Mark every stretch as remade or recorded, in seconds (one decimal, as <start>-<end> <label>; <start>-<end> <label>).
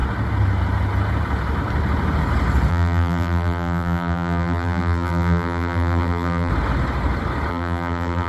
0.0-2.7 recorded; 2.7-6.5 remade; 6.5-7.5 recorded; 7.5-8.3 remade